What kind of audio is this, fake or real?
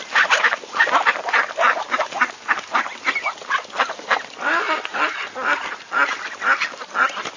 real